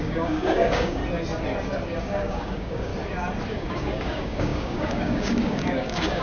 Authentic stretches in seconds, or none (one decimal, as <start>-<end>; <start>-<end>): 1.0-2.0; 2.9-3.5